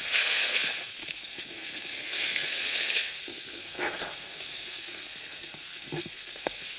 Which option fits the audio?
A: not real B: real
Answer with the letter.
A